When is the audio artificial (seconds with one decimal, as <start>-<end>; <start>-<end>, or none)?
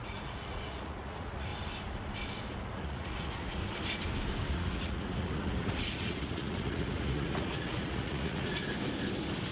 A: 0.0-1.5; 2.6-3.6; 4.5-8.6